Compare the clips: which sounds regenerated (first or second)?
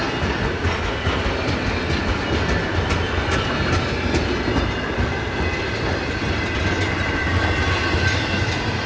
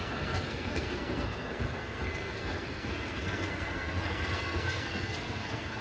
second